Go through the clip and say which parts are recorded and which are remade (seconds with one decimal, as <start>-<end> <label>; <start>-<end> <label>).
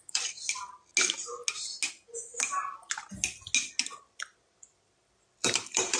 0.0-0.9 remade; 0.9-4.0 recorded; 4.0-6.0 remade